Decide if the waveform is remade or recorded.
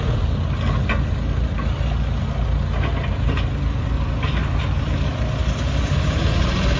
recorded